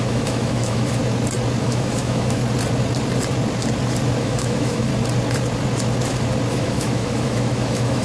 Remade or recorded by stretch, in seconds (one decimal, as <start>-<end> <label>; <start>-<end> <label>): 0.0-1.0 remade; 1.0-1.6 recorded; 1.6-2.4 remade; 2.4-4.2 recorded; 4.2-4.9 remade; 4.9-6.5 recorded; 6.5-8.0 remade